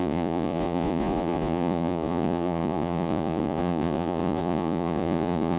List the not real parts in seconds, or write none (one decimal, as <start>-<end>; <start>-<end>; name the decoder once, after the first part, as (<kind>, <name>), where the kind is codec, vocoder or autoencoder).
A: 0.0-5.6 (vocoder, Vocos)

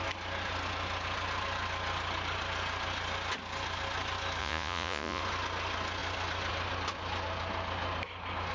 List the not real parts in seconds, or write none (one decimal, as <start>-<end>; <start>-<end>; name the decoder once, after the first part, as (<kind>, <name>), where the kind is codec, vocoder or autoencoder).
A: 4.4-5.2 (vocoder, Vocos)

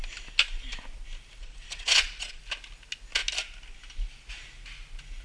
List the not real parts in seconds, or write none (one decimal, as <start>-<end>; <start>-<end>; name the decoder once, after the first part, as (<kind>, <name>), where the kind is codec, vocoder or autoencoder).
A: 1.4-2.4 (vocoder, Vocos)

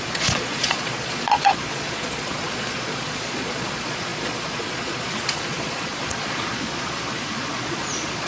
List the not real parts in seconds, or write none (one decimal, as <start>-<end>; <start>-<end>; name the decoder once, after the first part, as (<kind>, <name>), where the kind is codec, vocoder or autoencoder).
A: 0.0-8.3 (vocoder, Vocos)

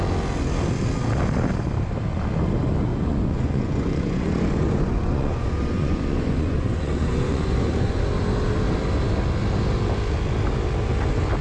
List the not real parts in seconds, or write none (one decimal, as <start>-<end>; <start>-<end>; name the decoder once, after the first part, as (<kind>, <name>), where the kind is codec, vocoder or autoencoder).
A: 2.9-8.0 (vocoder, Vocos)